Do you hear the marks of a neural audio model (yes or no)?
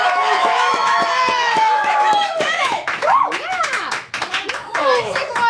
yes